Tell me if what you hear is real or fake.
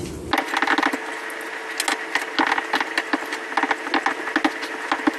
real